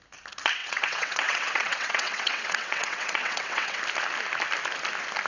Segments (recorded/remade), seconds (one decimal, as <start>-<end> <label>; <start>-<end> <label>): 0.0-0.6 recorded; 0.6-3.8 remade; 3.8-5.3 recorded